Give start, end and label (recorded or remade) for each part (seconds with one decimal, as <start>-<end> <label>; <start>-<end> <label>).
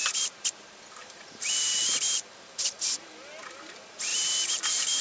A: 0.0-1.0 recorded; 1.0-1.8 remade; 1.8-4.1 recorded; 4.1-5.0 remade